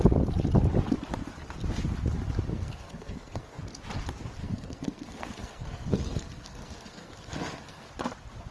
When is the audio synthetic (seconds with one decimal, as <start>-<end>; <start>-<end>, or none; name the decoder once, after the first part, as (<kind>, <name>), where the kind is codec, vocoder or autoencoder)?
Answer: 2.5-3.6 (codec, SNAC); 4.4-7.9